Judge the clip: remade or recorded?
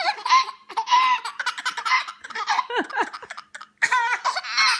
recorded